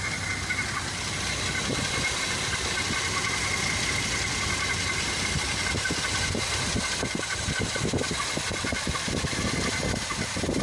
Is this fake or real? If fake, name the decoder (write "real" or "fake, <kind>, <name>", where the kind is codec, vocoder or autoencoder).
real